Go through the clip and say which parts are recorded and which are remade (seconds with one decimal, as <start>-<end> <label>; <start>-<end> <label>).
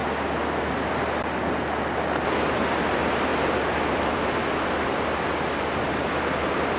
0.0-3.3 recorded; 3.3-4.6 remade; 4.6-6.8 recorded